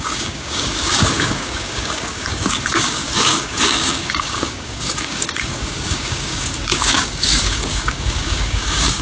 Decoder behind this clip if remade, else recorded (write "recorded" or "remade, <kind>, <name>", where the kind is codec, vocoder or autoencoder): remade, codec, DAC